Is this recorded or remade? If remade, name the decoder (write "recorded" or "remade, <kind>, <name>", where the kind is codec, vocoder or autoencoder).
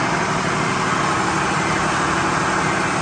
recorded